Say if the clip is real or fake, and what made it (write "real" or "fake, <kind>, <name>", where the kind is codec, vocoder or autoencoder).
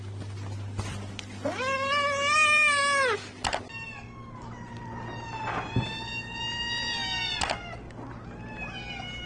real